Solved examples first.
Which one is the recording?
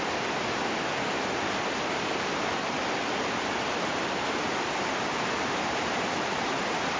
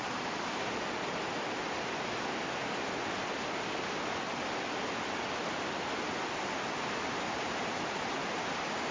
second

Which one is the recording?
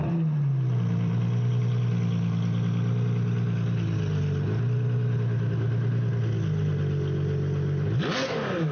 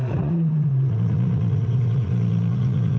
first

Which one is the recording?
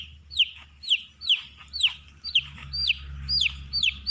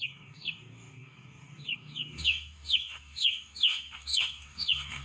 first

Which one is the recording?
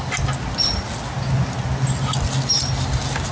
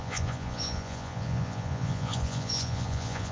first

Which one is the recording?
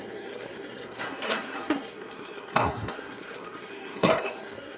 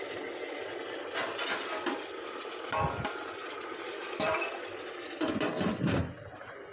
second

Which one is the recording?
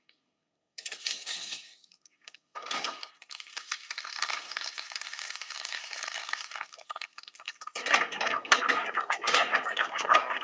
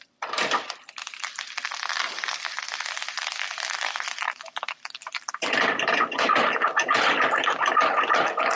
second